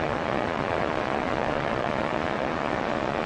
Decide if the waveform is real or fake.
fake